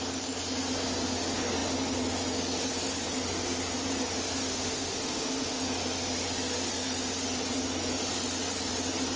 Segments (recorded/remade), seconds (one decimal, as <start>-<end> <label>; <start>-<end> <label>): 0.0-4.5 recorded; 4.5-5.6 remade; 5.6-9.2 recorded